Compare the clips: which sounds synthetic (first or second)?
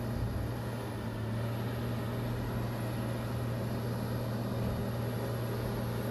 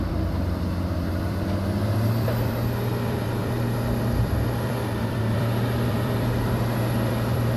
second